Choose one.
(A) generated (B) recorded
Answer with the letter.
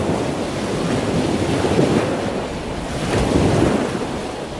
B